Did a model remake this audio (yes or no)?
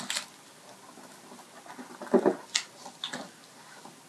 no